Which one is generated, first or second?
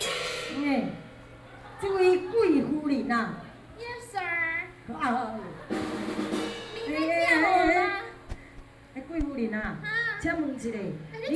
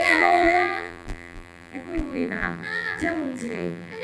second